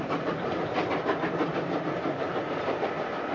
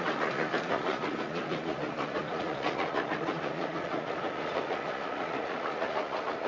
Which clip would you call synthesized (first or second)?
second